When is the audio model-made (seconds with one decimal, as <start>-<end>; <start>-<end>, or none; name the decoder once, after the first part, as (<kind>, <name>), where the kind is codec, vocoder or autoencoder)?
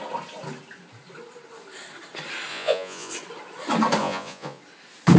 2.5-3.1 (vocoder, Vocos); 4.0-4.6